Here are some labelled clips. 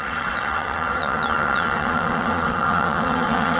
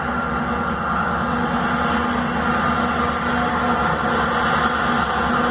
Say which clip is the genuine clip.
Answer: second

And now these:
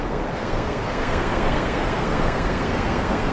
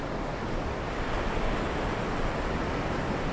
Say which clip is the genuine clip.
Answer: second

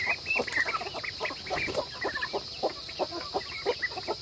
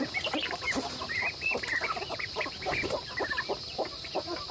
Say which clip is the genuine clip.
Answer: first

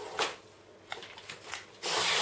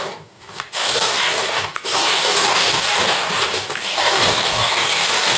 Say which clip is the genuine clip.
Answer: first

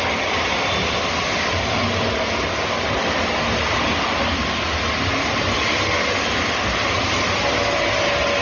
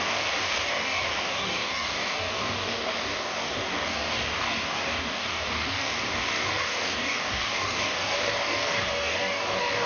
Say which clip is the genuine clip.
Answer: first